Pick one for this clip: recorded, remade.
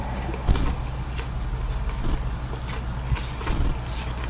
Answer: recorded